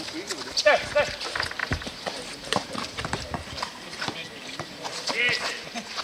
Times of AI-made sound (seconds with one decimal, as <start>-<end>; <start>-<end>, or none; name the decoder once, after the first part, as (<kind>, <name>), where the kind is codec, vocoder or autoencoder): 1.6-5.2 (vocoder, BigVGAN v2)